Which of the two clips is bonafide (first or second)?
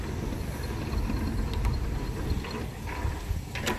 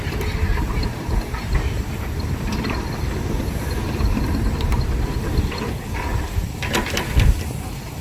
first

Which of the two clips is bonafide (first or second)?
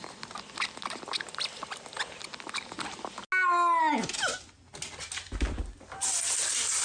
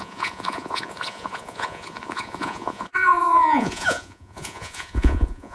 first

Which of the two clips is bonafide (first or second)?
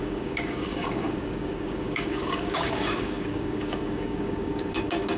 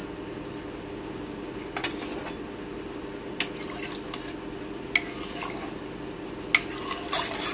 second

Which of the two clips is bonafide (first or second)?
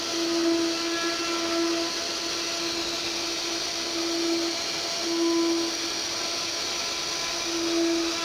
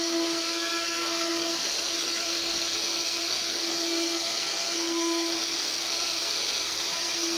first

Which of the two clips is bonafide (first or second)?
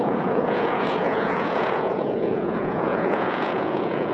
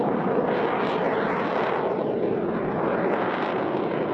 second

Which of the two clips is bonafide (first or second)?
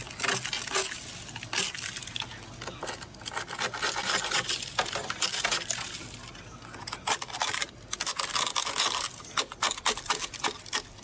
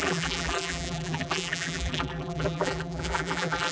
first